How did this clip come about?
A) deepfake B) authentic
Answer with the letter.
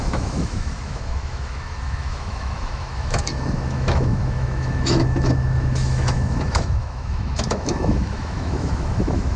A